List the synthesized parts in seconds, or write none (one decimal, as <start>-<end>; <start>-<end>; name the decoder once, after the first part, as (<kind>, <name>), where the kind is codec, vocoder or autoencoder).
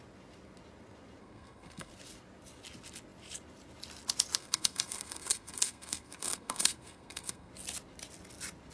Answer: 1.2-1.9 (codec, SNAC); 4.4-7.5